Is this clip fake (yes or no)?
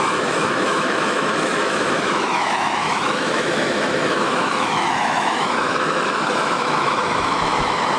yes